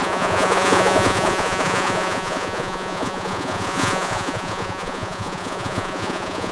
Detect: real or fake fake